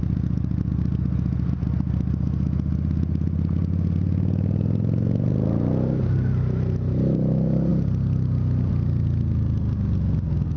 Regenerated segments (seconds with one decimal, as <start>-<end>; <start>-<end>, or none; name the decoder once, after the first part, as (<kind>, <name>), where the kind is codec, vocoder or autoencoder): none